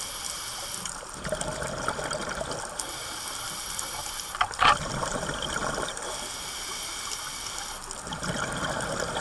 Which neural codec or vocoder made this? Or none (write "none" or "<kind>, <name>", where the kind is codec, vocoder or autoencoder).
none